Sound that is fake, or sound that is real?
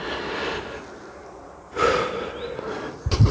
real